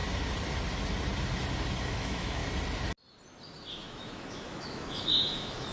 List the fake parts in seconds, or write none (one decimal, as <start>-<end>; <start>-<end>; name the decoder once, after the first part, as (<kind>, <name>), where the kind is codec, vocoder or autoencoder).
1.8-2.4 (autoencoder, DAC-VAE); 3.7-5.7